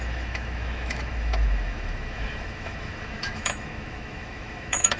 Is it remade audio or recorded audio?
remade